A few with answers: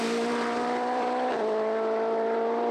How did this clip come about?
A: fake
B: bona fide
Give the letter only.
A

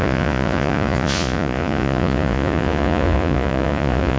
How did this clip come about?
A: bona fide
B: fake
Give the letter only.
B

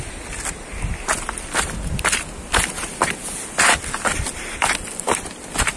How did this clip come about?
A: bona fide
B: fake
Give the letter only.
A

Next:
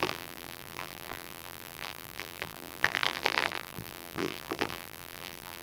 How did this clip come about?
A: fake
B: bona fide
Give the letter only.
A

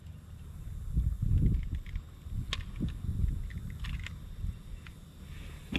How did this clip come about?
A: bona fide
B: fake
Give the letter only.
A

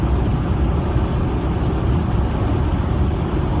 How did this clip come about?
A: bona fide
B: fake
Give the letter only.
A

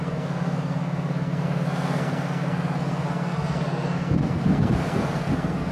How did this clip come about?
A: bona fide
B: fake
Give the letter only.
B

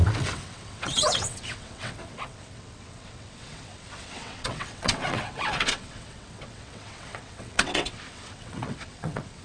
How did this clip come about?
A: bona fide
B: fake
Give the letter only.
B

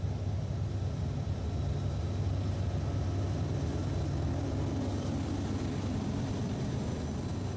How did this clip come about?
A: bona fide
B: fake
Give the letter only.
A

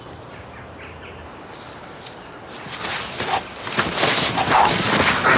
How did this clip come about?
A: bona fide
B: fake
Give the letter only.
A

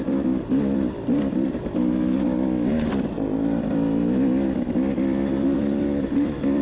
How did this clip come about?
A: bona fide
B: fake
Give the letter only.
B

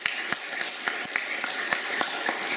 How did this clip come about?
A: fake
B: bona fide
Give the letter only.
B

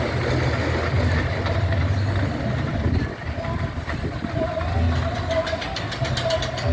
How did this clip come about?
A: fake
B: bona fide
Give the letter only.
B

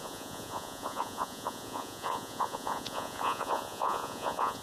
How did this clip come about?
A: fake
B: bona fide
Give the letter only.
A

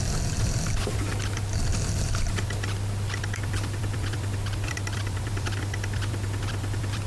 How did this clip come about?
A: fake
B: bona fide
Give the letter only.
A